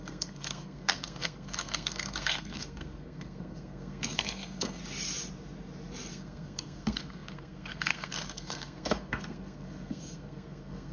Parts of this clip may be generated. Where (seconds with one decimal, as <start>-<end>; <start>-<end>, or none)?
0.0-4.8; 6.1-10.9